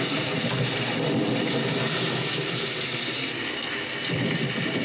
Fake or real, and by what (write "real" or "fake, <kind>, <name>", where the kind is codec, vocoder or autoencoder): real